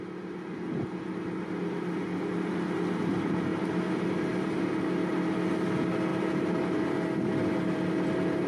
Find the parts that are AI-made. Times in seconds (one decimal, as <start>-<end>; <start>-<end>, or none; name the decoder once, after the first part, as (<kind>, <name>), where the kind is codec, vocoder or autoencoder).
3.5-4.7 (vocoder, BigVGAN v2); 6.1-6.8